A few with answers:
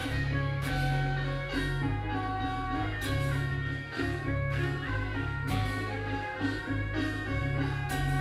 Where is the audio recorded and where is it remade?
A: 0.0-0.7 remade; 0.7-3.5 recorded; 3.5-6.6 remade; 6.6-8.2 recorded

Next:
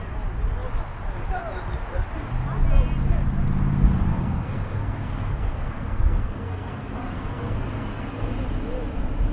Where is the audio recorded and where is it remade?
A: 0.0-4.1 recorded; 4.1-8.3 remade; 8.3-9.3 recorded

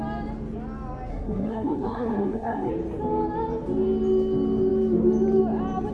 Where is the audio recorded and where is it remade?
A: 0.0-1.1 recorded; 1.1-2.7 remade; 2.7-5.9 recorded

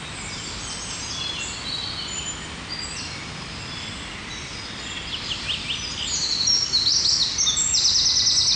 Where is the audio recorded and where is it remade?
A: 0.0-8.6 recorded

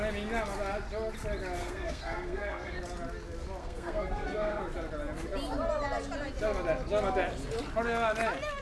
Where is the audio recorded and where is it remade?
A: 0.0-1.6 recorded; 1.6-2.8 remade; 2.8-3.6 recorded; 3.6-4.6 remade; 4.6-8.6 recorded